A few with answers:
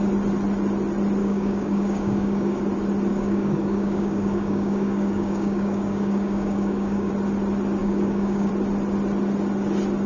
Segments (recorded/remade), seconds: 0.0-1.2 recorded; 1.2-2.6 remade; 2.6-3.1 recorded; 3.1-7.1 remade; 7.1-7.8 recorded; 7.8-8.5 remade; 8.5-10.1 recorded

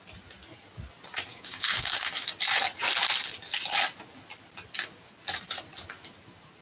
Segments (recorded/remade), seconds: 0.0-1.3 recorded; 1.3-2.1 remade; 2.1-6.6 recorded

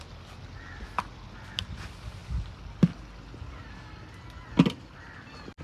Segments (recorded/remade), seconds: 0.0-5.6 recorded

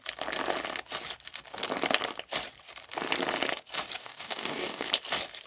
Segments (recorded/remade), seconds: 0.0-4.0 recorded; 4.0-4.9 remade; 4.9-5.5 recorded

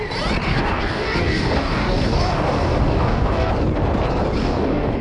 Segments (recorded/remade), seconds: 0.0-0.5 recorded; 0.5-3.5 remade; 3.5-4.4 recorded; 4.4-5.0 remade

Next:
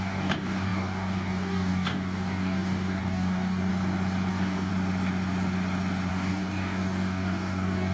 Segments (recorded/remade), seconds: 0.0-3.7 remade; 3.7-4.3 recorded; 4.3-4.7 remade; 4.7-6.1 recorded; 6.1-7.9 remade